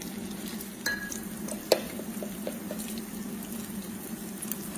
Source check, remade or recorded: recorded